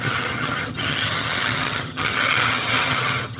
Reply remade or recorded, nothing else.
remade